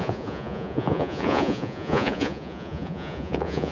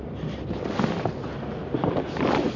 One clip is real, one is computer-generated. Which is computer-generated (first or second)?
first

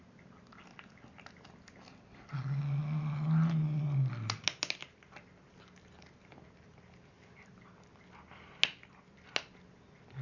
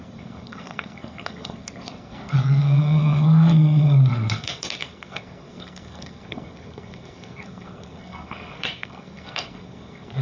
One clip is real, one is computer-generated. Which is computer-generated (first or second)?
second